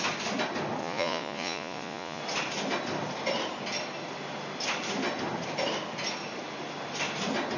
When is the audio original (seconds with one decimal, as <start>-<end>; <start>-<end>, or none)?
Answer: 0.0-0.8; 2.2-7.6